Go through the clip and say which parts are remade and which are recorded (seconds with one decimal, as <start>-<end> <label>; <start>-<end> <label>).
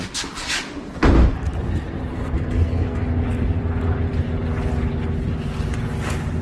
0.0-2.1 recorded; 2.1-3.0 remade; 3.0-6.4 recorded